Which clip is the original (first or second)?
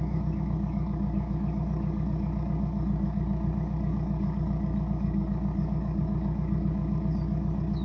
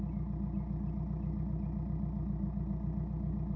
second